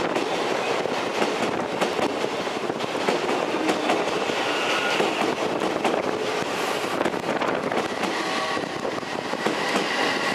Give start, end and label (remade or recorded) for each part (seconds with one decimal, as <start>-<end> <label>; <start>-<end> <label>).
0.0-10.3 recorded